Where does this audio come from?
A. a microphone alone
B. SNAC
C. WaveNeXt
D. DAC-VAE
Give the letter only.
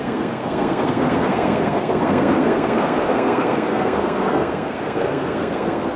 B